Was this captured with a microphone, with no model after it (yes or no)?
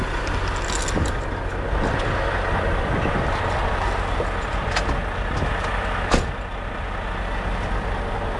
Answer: yes